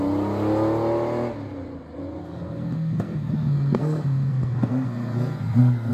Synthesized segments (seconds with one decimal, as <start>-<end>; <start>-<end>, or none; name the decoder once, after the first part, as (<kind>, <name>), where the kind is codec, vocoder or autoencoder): 2.2-5.9 (codec, SNAC)